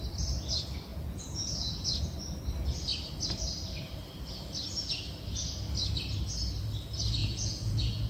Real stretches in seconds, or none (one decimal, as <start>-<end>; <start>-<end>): 0.0-0.9; 2.0-7.2